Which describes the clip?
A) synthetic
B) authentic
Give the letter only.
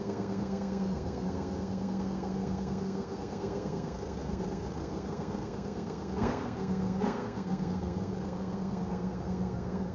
A